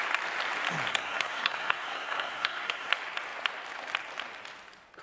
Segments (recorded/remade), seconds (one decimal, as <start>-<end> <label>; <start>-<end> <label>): 0.0-0.9 recorded; 0.9-2.9 remade; 2.9-5.0 recorded